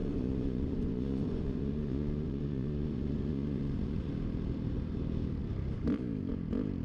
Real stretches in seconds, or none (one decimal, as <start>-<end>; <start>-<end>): 4.1-6.8